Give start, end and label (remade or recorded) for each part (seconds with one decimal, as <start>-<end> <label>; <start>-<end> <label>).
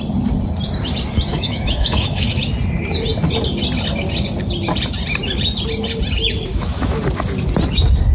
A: 0.0-1.3 recorded; 1.3-2.4 remade; 2.4-6.5 recorded; 6.5-7.0 remade; 7.0-8.1 recorded